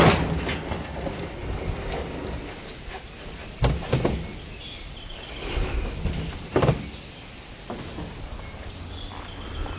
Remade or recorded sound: recorded